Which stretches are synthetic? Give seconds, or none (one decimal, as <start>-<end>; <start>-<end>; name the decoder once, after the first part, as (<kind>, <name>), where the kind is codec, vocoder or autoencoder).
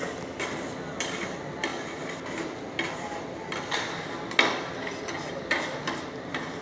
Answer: none